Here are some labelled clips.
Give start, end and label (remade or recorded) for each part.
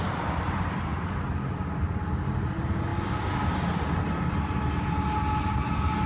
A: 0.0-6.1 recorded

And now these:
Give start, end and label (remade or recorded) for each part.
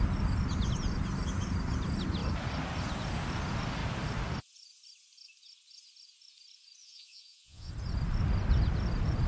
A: 0.0-6.8 recorded; 6.8-7.7 remade; 7.7-9.3 recorded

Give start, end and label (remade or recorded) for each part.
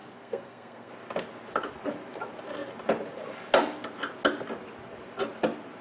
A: 0.0-0.9 remade; 0.9-5.8 recorded